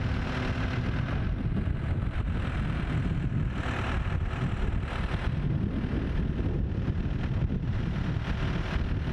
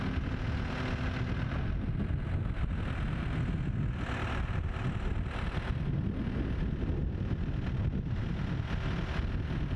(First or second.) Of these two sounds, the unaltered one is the second